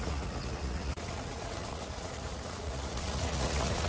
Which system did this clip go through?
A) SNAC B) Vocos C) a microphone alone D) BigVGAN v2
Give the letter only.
B